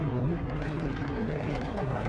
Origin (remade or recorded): remade